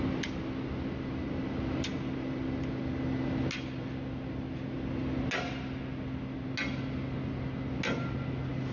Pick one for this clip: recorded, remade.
recorded